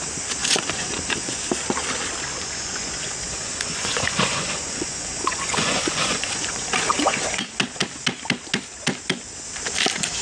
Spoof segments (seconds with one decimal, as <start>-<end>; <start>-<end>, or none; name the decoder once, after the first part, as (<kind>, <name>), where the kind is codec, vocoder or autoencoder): 0.4-1.4 (vocoder, Vocos); 2.3-7.5